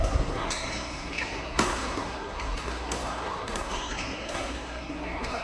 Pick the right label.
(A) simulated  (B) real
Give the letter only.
A